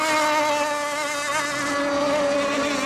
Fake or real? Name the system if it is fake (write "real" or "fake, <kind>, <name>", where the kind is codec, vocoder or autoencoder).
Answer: real